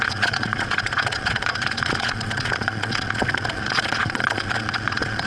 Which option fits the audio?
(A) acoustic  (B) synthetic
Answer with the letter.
B